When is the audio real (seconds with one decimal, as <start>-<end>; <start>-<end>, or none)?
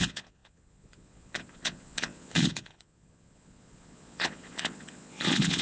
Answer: none